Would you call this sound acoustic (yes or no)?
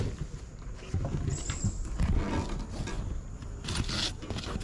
yes